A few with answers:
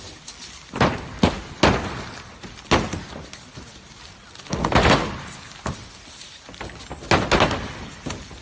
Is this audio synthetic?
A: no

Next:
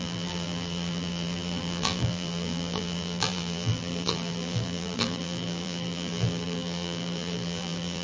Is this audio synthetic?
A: yes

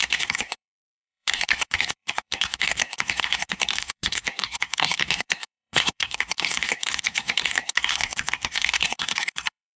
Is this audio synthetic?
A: yes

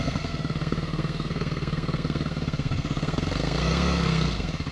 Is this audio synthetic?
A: yes